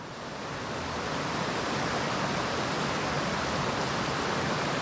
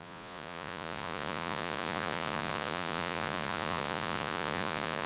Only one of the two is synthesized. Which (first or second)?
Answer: second